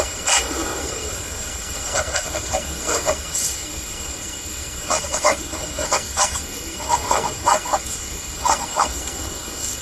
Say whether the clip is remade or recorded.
remade